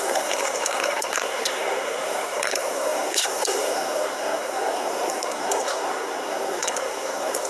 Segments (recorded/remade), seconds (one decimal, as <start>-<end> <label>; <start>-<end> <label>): 0.0-7.5 remade